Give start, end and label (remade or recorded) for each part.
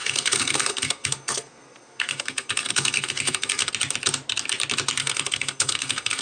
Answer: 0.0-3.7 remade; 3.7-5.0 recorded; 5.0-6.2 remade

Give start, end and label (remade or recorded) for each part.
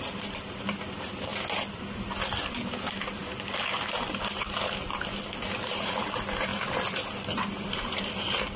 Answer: 0.0-8.6 recorded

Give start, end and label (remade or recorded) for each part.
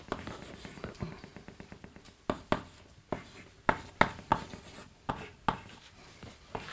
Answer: 0.0-6.7 recorded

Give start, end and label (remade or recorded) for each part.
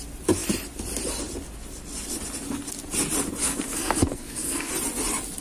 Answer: 0.0-3.4 recorded; 3.4-4.7 remade; 4.7-5.4 recorded